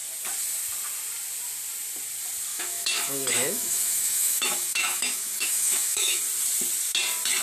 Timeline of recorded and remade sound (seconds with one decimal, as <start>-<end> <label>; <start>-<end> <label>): 0.0-2.5 recorded; 2.5-6.2 remade; 6.2-7.4 recorded